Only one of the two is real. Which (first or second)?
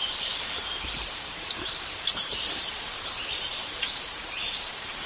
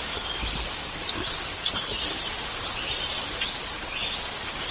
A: second